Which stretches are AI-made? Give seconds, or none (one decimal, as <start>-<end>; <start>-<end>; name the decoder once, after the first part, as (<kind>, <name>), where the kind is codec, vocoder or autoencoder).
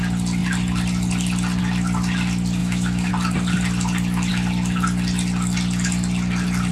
2.6-3.1 (autoencoder, DAC-VAE)